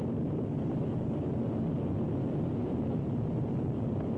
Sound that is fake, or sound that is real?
real